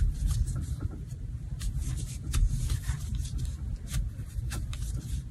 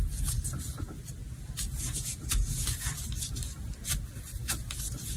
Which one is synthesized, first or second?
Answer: first